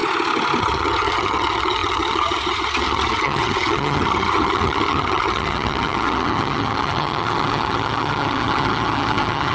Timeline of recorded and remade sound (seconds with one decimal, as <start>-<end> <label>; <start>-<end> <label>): 0.0-0.6 recorded; 0.6-9.5 remade